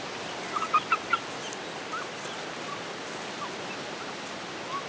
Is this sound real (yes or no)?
yes